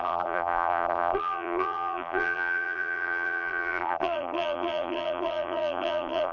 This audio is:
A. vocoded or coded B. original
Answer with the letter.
A